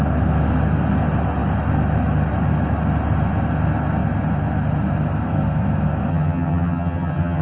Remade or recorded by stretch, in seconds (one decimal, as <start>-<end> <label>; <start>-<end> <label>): 0.0-6.1 recorded; 6.1-7.4 remade